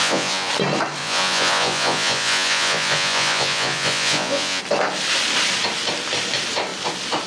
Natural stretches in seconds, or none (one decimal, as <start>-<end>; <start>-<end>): 0.5-1.0; 4.6-7.3